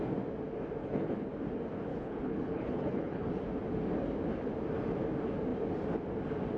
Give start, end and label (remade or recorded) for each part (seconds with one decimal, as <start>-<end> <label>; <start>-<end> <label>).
0.0-0.8 recorded; 0.8-1.3 remade; 1.3-1.9 recorded; 1.9-3.3 remade; 3.3-6.6 recorded